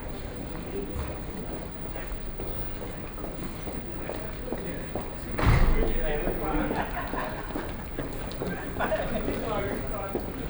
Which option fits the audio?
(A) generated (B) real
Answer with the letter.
B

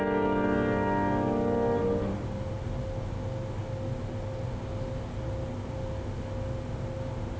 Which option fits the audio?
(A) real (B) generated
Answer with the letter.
A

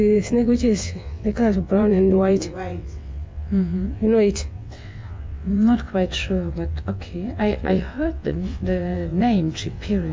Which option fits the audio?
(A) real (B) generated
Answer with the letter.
B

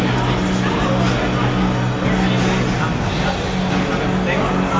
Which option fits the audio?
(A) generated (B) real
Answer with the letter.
B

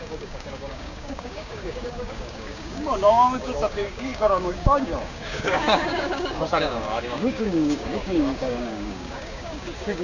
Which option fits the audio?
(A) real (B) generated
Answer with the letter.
B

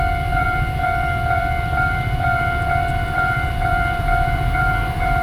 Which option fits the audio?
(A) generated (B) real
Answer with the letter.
A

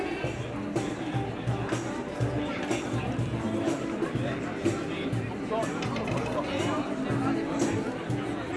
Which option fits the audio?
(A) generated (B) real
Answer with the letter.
B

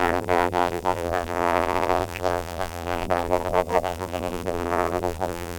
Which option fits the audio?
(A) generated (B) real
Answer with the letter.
A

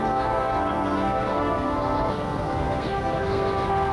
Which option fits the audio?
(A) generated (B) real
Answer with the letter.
A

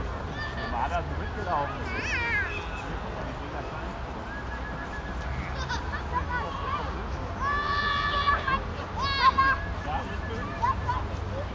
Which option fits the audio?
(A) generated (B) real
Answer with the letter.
B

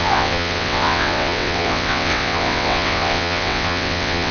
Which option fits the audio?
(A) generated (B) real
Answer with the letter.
A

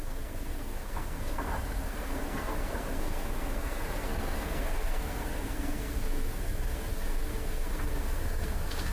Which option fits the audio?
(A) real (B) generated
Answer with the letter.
B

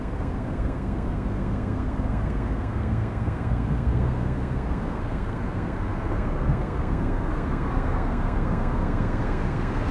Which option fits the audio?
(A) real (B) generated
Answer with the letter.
B